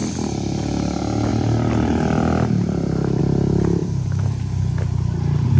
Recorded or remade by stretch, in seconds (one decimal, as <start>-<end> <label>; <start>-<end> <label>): 0.0-0.6 remade; 0.6-1.3 recorded; 1.3-3.2 remade; 3.2-3.8 recorded; 3.8-4.4 remade; 4.4-5.6 recorded